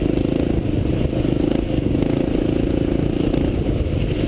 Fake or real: real